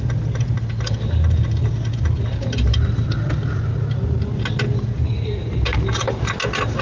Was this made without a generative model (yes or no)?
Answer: yes